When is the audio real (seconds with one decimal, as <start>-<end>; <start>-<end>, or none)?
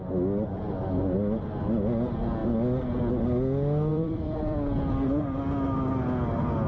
0.0-3.9; 4.9-6.7